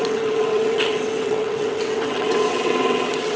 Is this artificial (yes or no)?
yes